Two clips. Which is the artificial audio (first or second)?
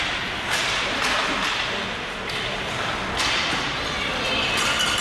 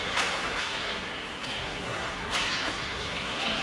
second